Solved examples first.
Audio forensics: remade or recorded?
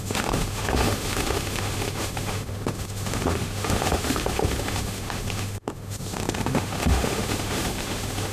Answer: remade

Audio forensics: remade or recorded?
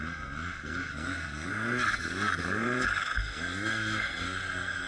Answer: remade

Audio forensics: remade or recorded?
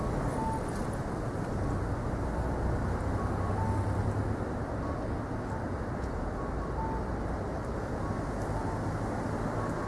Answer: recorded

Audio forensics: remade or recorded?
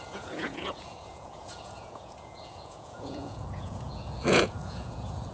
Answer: remade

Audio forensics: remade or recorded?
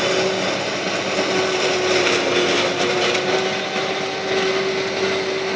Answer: recorded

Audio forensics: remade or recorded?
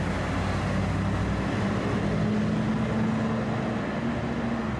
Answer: recorded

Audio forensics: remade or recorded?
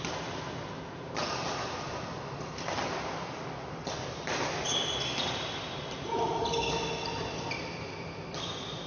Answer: recorded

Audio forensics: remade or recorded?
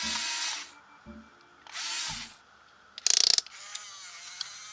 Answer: recorded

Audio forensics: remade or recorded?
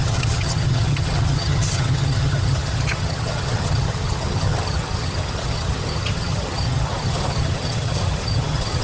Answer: remade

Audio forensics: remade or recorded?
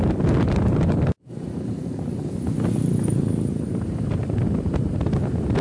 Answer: recorded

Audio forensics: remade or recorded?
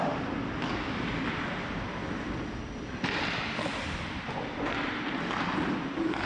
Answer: recorded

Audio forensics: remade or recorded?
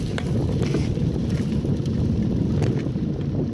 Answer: recorded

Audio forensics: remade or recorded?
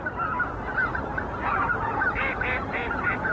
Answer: recorded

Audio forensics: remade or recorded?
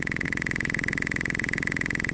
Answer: remade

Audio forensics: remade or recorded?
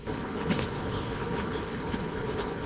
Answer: remade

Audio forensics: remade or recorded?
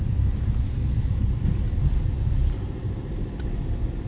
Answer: recorded